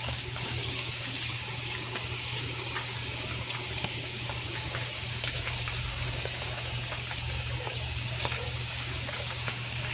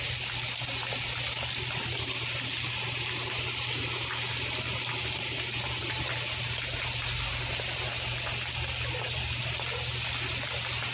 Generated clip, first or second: first